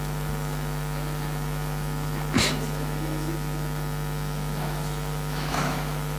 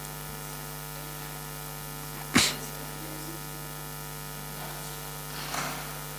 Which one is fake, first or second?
first